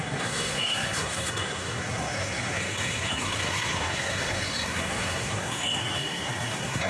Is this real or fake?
fake